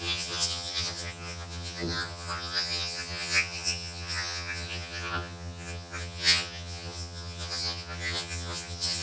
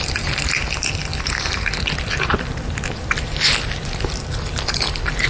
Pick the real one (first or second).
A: second